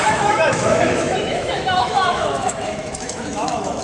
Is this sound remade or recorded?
remade